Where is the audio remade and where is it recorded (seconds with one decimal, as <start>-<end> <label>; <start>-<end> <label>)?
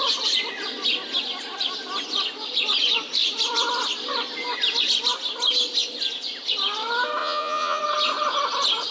0.0-7.2 recorded; 7.2-7.8 remade; 7.8-8.9 recorded